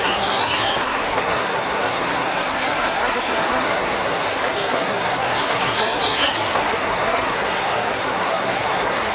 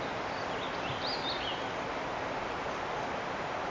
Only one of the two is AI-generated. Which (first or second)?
first